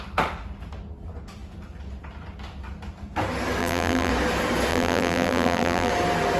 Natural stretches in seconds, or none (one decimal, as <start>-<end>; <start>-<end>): 0.0-3.6; 4.1-4.7; 5.9-6.4